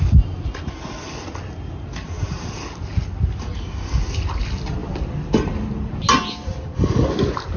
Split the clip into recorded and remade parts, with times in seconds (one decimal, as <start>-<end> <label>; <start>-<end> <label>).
0.0-7.6 recorded